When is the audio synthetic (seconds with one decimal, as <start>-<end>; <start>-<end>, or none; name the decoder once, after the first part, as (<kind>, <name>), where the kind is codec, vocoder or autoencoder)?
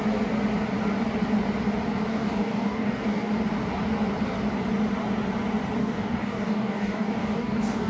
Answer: 2.1-3.3 (codec, DAC); 5.8-7.9